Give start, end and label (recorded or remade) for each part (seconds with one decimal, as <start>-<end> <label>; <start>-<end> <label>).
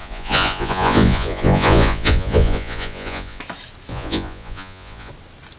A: 0.0-3.4 remade; 3.4-3.9 recorded; 3.9-5.1 remade; 5.1-5.6 recorded